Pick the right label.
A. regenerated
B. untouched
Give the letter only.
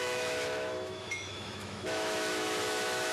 A